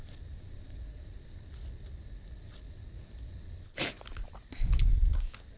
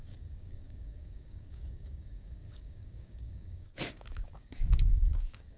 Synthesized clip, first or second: second